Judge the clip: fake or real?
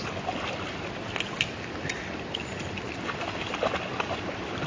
real